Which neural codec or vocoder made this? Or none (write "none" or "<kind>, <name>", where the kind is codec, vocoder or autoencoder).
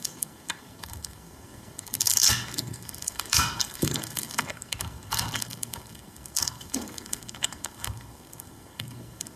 codec, SNAC